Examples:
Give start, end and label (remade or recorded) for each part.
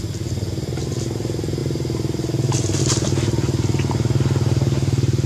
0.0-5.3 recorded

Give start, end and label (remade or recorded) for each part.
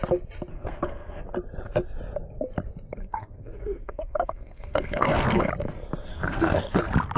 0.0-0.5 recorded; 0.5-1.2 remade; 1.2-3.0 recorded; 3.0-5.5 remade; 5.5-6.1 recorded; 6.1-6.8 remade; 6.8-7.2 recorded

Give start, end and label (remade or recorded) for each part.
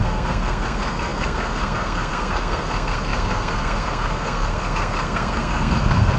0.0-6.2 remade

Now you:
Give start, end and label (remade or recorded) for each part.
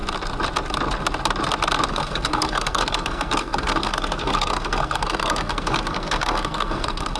0.0-1.9 recorded; 1.9-7.2 remade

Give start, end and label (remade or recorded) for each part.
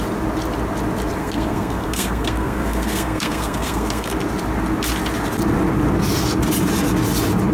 0.0-1.2 recorded; 1.2-4.1 remade; 4.1-7.5 recorded